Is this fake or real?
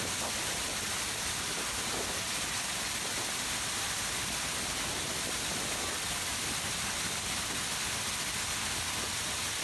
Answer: real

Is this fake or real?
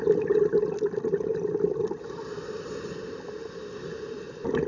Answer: real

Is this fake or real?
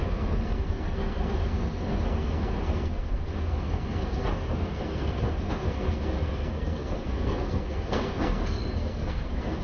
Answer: fake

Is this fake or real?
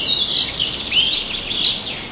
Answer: real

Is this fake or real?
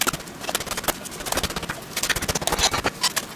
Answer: real